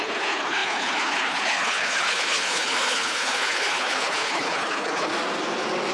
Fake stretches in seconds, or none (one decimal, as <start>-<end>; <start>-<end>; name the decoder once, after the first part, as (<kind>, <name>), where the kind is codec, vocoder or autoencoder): 0.0-5.1 (codec, HILCodec)